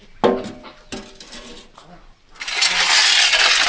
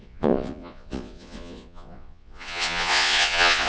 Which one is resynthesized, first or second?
second